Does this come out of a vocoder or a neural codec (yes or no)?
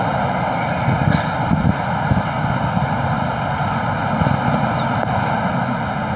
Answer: no